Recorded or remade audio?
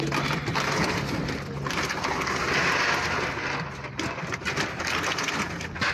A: recorded